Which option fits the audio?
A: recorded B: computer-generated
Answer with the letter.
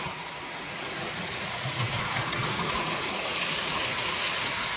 B